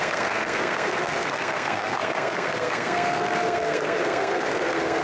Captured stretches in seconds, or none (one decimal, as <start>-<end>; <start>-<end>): none